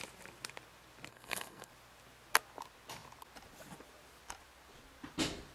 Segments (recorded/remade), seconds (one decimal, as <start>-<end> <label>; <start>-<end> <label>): 0.0-1.1 recorded; 1.1-1.7 remade; 1.7-5.5 recorded